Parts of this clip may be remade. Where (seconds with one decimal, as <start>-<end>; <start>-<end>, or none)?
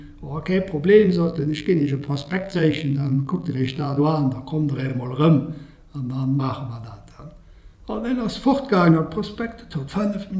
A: 1.0-4.0